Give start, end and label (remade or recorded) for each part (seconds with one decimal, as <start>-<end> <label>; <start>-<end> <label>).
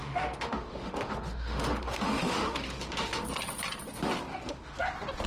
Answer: 0.0-3.2 remade; 3.2-4.3 recorded; 4.3-4.8 remade; 4.8-5.3 recorded